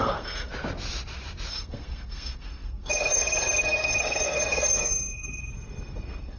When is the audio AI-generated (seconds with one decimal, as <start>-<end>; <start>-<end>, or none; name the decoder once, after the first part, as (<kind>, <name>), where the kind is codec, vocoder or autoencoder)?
0.0-0.5 (codec, SNAC); 1.5-6.4